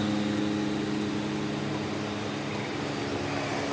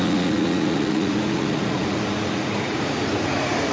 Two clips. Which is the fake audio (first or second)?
second